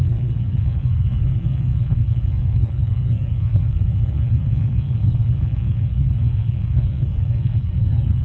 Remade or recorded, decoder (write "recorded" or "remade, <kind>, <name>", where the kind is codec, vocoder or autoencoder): remade, codec, SNAC